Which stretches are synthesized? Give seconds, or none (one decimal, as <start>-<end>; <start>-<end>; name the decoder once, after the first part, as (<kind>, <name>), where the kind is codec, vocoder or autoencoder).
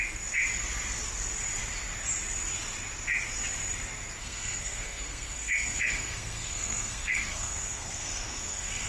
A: 4.2-8.9 (codec, SNAC)